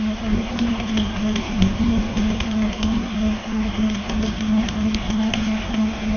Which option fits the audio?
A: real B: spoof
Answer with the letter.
B